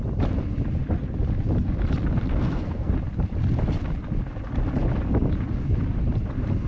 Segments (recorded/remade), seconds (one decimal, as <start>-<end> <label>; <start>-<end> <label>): 0.0-2.3 recorded; 2.3-2.9 remade; 2.9-6.7 recorded